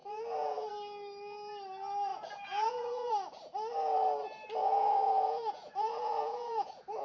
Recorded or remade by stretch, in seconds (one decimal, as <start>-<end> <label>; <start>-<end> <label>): 0.0-0.7 remade; 0.7-2.1 recorded; 2.1-3.1 remade; 3.1-4.6 recorded; 4.6-7.0 remade